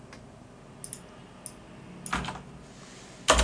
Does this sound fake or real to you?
real